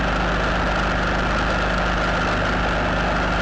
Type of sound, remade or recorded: recorded